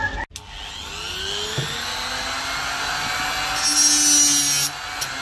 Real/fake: real